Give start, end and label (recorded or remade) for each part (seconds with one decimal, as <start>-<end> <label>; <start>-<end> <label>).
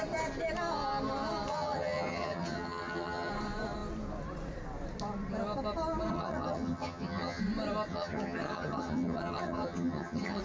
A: 0.0-1.5 recorded; 1.5-3.3 remade; 3.3-6.1 recorded; 6.1-7.4 remade; 7.4-7.9 recorded; 7.9-10.4 remade